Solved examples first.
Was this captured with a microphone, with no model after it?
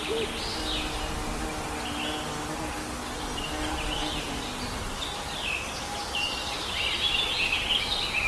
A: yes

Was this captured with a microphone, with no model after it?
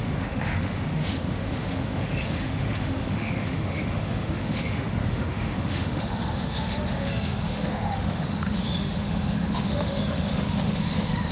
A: no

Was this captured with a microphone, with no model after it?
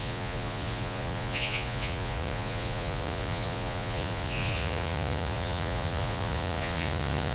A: no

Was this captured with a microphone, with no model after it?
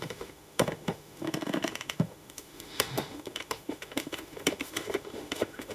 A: no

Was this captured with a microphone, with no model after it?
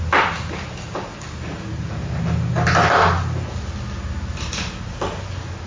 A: yes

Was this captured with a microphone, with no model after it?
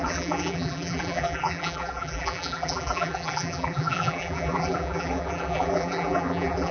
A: no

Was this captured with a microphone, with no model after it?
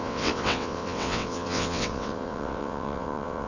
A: no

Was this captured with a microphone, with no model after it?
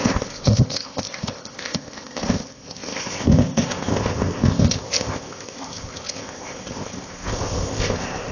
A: no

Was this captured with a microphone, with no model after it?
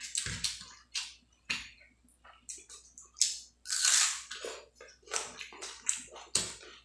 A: yes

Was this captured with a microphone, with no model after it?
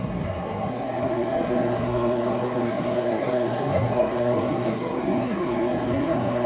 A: no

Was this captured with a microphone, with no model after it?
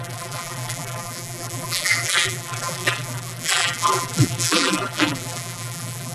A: no